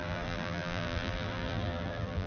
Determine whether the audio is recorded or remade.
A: remade